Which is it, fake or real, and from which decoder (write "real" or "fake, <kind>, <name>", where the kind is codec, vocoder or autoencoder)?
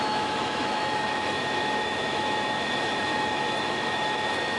fake, autoencoder, DAC-VAE